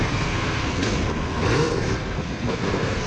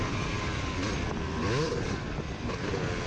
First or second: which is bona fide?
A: second